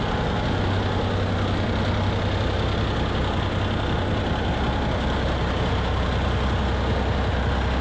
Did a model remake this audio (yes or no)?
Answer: no